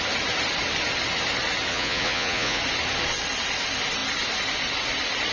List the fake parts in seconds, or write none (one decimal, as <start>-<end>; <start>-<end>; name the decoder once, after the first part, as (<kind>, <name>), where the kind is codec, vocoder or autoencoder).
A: 1.7-2.6 (vocoder, Vocos)